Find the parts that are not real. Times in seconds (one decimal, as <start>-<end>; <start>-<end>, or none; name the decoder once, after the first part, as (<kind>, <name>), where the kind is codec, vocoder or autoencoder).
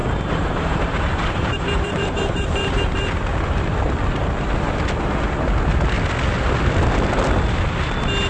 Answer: 0.0-3.4 (vocoder, BigVGAN v2)